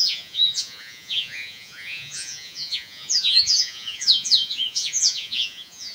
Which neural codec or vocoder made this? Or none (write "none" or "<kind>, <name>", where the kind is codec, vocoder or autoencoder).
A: vocoder, Vocos